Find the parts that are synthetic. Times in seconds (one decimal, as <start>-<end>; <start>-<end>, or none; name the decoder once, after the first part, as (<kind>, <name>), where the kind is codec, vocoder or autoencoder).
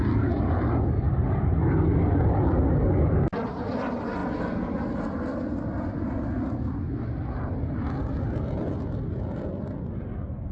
none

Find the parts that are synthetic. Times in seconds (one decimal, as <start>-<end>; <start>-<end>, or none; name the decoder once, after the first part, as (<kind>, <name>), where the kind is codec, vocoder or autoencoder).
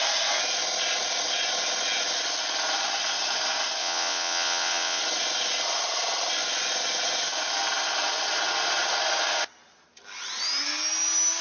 3.8-5.0 (vocoder, WaveNeXt)